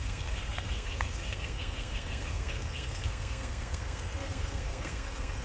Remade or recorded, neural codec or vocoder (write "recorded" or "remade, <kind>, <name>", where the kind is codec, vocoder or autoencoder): remade, codec, SNAC